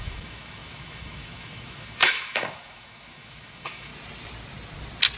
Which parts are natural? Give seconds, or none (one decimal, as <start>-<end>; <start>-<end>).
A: 3.9-5.2